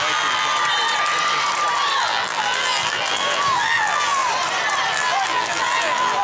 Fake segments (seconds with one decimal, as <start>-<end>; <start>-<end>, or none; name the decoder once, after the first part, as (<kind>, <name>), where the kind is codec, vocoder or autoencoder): 0.0-0.5 (vocoder, BigVGAN v2); 2.0-4.2; 4.9-6.2